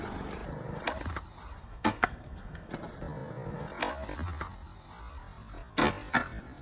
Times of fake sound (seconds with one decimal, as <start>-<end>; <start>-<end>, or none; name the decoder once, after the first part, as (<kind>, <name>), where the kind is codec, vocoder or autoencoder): 1.6-2.7 (codec, SNAC)